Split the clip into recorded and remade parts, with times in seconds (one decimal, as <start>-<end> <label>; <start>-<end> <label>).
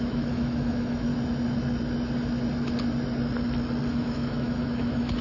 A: 0.0-1.1 remade; 1.1-3.9 recorded; 3.9-5.2 remade